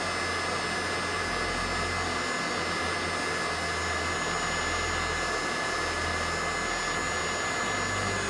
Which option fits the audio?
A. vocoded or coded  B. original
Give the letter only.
B